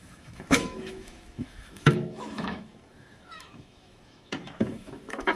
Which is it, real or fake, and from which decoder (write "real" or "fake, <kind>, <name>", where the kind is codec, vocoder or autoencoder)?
fake, autoencoder, DAC-VAE